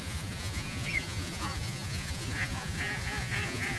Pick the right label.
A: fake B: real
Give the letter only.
A